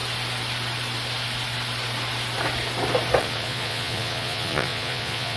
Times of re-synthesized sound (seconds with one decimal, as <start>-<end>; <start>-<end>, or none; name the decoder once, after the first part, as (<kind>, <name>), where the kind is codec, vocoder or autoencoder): 3.2-5.4 (vocoder, Vocos)